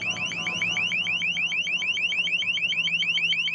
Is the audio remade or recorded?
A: recorded